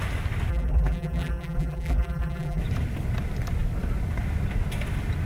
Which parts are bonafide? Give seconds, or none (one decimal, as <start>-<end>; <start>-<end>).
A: 0.0-0.5; 2.6-5.3